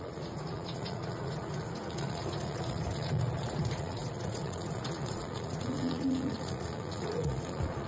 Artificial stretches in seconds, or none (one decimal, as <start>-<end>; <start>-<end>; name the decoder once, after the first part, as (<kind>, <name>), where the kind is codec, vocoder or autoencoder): 0.0-7.9 (vocoder, Vocos)